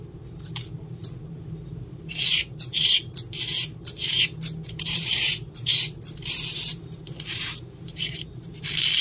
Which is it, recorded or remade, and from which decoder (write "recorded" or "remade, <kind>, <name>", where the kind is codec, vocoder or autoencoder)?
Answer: remade, vocoder, BigVGAN v2